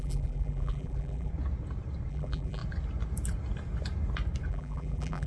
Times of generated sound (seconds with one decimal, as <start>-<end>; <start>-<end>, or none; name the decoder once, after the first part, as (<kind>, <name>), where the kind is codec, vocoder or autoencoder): 0.0-1.3 (vocoder, BigVGAN v2); 2.1-2.6; 4.5-5.3